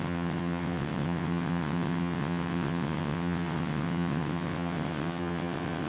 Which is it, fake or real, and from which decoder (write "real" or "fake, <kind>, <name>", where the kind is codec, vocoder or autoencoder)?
fake, vocoder, WaveNeXt